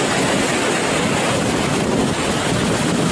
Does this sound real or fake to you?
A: real